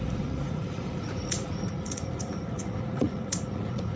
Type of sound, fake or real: fake